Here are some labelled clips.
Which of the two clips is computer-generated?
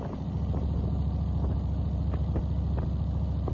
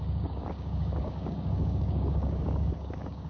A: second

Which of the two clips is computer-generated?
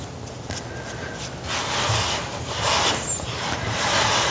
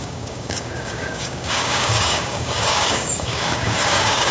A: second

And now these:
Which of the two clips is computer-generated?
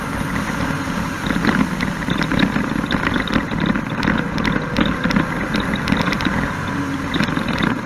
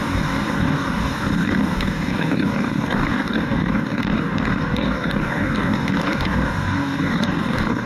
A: second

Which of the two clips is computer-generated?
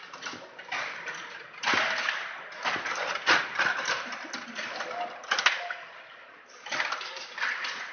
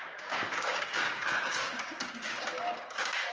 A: second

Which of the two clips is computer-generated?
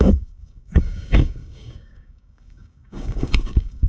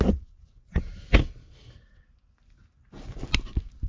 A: first